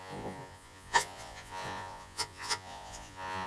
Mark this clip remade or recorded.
remade